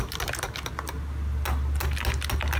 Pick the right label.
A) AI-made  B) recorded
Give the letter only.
B